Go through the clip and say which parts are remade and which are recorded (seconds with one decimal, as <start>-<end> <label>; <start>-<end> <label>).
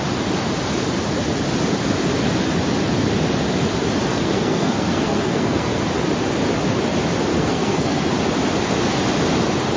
0.0-4.1 recorded; 4.1-5.8 remade; 5.8-7.3 recorded; 7.3-8.1 remade; 8.1-9.8 recorded